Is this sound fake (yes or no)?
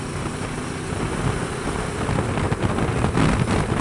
no